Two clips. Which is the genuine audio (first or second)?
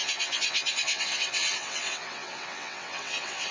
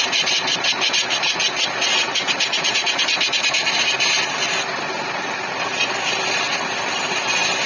second